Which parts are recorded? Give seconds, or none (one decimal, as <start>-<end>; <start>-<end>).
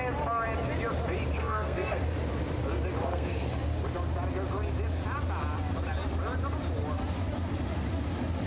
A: 0.0-1.4; 2.0-3.0; 3.5-8.5